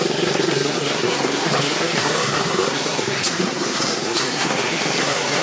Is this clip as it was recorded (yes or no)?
no